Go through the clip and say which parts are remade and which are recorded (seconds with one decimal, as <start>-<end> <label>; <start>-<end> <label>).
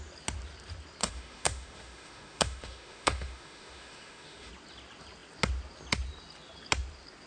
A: 0.0-1.0 recorded; 1.0-4.5 remade; 4.5-7.3 recorded